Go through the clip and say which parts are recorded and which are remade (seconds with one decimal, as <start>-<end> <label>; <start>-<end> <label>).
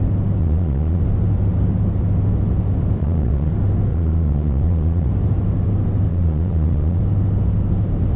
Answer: 0.0-0.4 recorded; 0.4-1.0 remade; 1.0-3.0 recorded; 3.0-3.5 remade; 3.5-3.9 recorded; 3.9-5.1 remade; 5.1-6.1 recorded; 6.1-7.0 remade; 7.0-8.2 recorded